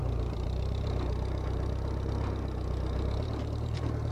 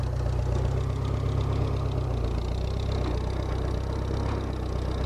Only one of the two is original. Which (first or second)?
second